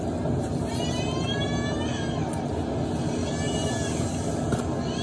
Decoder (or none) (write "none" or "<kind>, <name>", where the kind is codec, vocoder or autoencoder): none